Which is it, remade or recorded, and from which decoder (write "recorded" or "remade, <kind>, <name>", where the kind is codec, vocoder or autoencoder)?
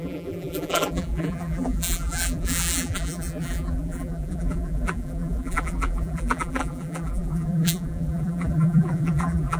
remade, vocoder, BigVGAN v2